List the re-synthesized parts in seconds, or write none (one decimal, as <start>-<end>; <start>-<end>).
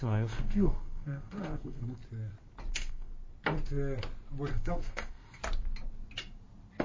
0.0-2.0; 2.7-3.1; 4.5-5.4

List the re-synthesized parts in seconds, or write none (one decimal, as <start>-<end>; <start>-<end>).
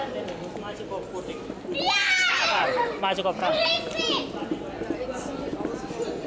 none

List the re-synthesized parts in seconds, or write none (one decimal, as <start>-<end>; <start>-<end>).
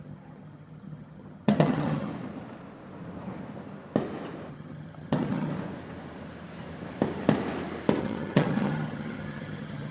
0.0-2.1; 4.5-5.5; 8.0-9.9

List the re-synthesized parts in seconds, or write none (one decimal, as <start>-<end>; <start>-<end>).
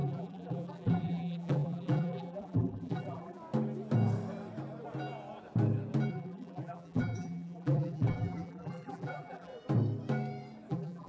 0.0-3.4; 6.1-9.5; 10.7-11.1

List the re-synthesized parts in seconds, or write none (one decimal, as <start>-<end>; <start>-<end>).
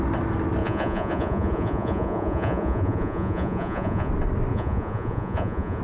0.6-4.1; 4.5-5.8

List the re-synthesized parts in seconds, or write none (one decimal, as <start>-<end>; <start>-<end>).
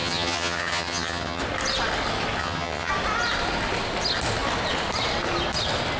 0.0-1.4; 2.4-2.9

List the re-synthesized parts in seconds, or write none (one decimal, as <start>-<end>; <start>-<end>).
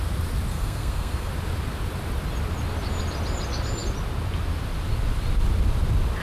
0.5-1.3